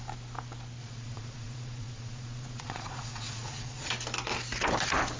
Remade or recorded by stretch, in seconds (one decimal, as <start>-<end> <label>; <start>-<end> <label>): 0.0-0.8 recorded; 0.8-3.9 remade; 3.9-5.2 recorded